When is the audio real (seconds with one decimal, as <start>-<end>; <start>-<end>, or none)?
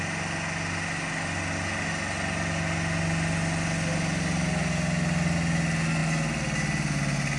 0.0-7.4